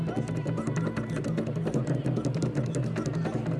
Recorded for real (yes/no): yes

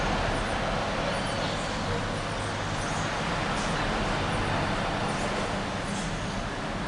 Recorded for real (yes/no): yes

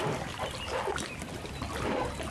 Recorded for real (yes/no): yes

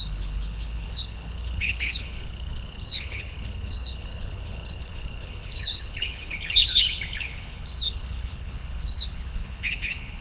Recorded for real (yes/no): no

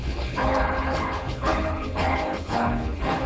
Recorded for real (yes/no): no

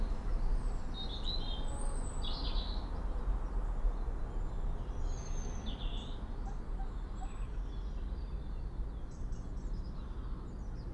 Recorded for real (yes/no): yes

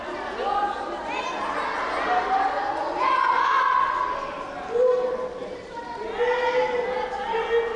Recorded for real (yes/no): yes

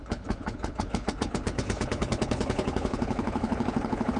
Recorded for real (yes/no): no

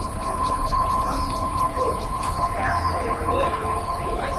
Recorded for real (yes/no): no